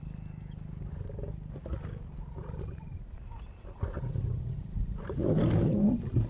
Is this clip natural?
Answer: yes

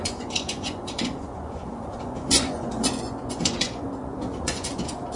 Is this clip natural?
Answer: no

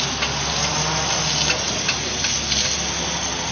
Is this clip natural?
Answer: yes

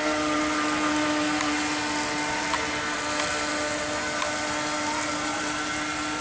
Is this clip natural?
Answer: yes